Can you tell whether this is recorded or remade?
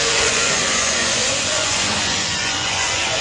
remade